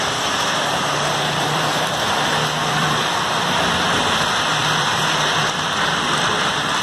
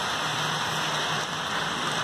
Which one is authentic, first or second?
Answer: second